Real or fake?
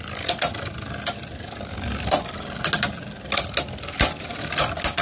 real